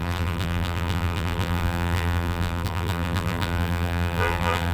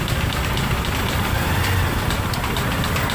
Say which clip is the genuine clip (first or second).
second